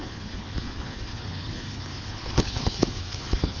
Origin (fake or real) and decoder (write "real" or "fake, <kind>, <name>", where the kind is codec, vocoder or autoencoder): fake, codec, HILCodec